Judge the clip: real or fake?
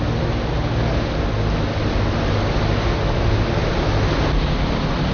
real